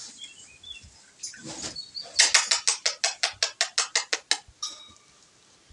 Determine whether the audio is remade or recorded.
recorded